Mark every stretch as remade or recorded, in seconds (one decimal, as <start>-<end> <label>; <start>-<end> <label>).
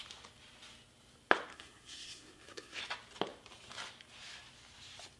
0.0-1.5 recorded; 1.5-2.8 remade; 2.8-5.2 recorded